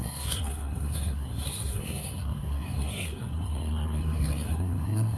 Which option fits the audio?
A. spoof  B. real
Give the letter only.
A